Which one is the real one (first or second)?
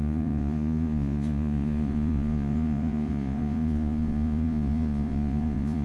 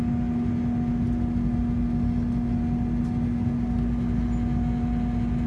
second